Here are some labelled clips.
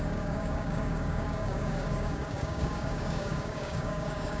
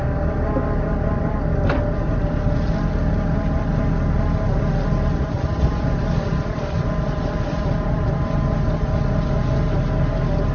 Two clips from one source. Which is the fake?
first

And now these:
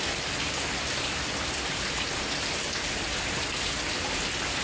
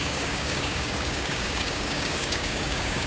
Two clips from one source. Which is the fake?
second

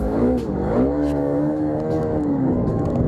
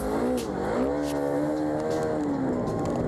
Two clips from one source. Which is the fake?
first